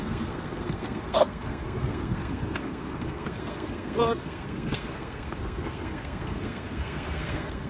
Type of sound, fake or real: fake